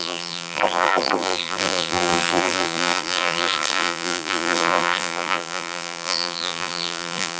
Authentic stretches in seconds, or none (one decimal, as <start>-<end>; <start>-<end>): none